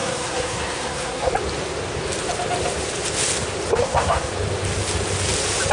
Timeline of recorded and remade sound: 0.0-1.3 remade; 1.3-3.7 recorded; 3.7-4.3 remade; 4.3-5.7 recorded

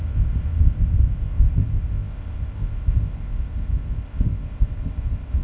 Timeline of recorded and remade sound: 0.0-5.4 remade

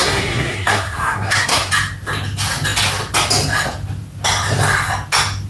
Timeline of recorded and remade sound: 0.0-1.7 remade; 1.7-5.5 recorded

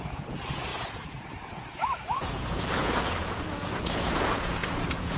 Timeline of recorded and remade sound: 0.0-5.2 remade

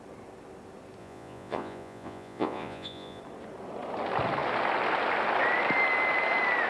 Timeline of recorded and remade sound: 0.0-1.0 recorded; 1.0-3.2 remade; 3.2-6.7 recorded

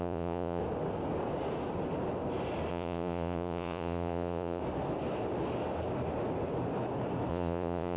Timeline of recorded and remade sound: 0.0-0.6 remade; 0.6-2.7 recorded; 2.7-4.6 remade; 4.6-7.3 recorded; 7.3-8.0 remade

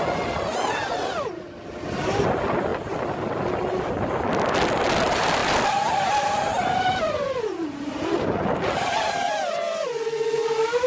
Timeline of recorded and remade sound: 0.0-10.9 recorded